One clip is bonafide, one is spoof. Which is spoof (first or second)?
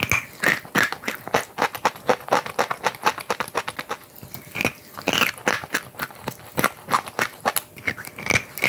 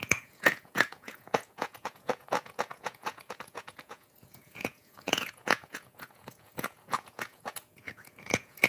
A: second